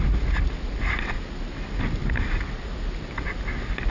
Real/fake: real